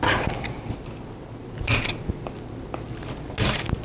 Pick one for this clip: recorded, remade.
recorded